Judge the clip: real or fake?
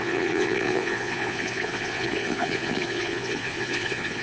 fake